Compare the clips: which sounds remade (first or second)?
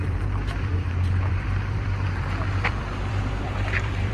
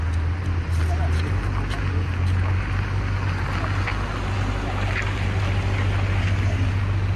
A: first